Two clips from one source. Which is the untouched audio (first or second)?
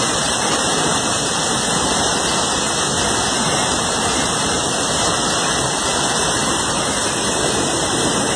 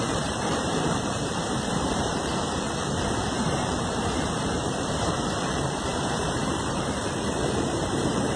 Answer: first